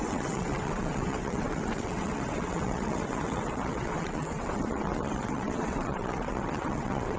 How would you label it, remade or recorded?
remade